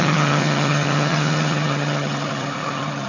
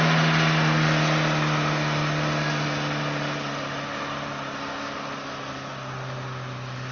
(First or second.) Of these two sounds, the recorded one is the second